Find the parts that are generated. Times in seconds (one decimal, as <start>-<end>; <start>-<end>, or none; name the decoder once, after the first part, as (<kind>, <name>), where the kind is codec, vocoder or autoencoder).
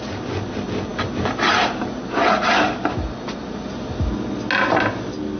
none